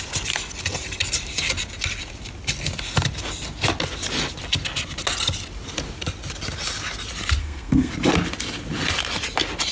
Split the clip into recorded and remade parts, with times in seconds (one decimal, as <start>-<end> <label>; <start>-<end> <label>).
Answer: 0.0-7.4 recorded; 7.4-7.9 remade; 7.9-9.7 recorded